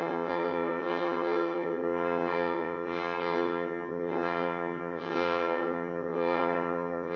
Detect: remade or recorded remade